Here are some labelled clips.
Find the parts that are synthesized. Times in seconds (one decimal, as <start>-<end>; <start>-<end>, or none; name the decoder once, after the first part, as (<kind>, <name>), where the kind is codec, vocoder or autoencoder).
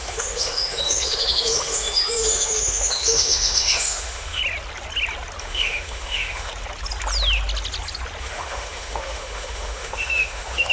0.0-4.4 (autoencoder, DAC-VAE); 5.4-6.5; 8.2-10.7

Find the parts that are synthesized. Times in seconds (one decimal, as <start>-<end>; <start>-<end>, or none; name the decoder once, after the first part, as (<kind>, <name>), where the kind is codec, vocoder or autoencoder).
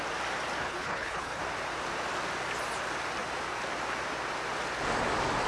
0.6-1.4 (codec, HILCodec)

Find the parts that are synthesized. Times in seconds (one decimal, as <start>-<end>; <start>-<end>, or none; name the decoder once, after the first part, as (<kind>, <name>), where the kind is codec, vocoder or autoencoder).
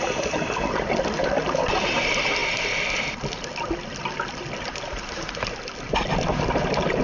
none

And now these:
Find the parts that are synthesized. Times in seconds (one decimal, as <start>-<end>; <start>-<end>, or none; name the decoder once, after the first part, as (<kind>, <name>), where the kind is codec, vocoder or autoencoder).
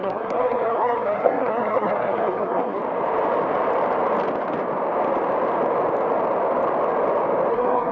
0.0-2.8 (codec, SNAC); 7.5-7.9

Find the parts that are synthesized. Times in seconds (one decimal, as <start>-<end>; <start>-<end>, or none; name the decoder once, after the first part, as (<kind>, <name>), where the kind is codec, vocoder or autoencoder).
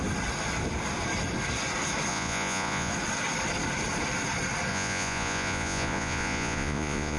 2.1-2.9 (vocoder, Vocos); 4.7-7.2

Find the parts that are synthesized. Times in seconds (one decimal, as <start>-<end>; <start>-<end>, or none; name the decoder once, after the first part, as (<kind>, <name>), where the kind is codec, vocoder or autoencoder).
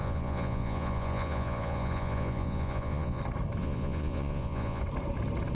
0.0-3.2 (vocoder, Vocos); 3.6-4.8